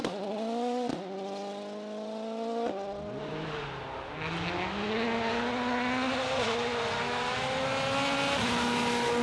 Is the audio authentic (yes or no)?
yes